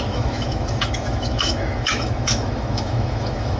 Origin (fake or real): fake